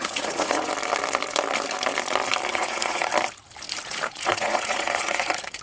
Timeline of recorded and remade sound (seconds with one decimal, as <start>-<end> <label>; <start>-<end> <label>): 0.0-0.7 remade; 0.7-2.5 recorded; 2.5-3.1 remade; 3.1-4.1 recorded; 4.1-5.6 remade